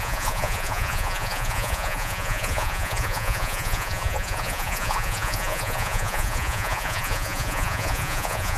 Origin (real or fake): fake